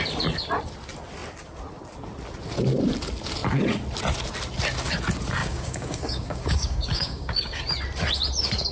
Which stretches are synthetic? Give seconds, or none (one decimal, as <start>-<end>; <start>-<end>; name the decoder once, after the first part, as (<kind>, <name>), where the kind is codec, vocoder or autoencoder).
5.4-7.6 (codec, DAC)